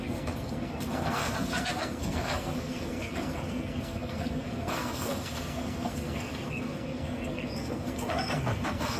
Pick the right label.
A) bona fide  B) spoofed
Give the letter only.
B